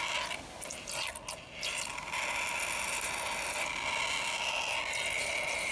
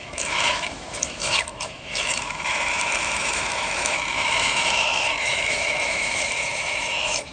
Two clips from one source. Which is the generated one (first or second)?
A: second